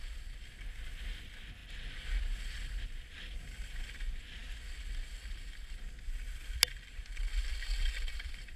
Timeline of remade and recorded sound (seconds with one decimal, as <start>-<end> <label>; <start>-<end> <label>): 0.0-8.6 recorded

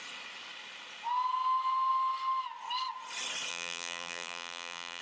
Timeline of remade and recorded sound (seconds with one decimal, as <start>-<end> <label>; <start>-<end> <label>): 0.0-3.5 recorded; 3.5-5.0 remade

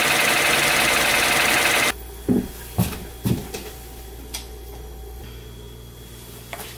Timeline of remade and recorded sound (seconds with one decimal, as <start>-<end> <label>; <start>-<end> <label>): 0.0-6.8 recorded

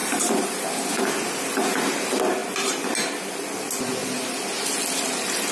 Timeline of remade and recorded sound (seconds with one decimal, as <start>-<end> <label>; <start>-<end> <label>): 0.0-0.9 remade; 0.9-5.5 recorded

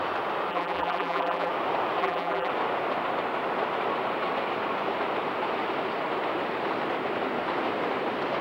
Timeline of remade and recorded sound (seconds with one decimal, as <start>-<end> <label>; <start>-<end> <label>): 0.0-0.5 recorded; 0.5-1.5 remade; 1.5-2.0 recorded; 2.0-2.5 remade; 2.5-8.4 recorded

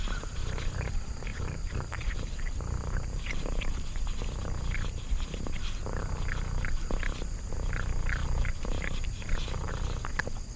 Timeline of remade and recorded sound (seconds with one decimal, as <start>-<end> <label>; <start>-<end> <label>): 0.0-1.3 recorded; 1.3-3.8 remade; 3.8-8.2 recorded; 8.2-9.7 remade; 9.7-10.6 recorded